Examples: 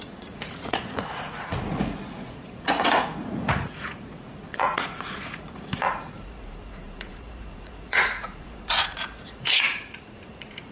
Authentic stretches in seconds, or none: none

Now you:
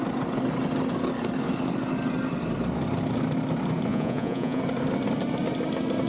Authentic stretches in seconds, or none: 0.0-3.9; 4.6-6.1

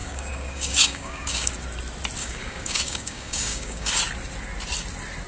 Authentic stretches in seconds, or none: 1.5-2.2; 3.9-5.3